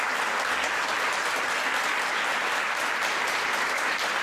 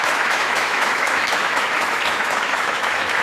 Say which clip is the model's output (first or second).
second